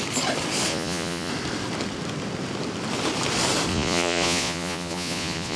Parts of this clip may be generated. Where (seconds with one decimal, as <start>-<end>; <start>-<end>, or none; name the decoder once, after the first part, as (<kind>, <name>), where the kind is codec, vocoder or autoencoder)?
0.7-1.3 (vocoder, Vocos); 3.7-5.6